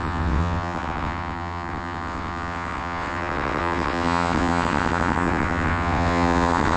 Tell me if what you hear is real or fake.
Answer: fake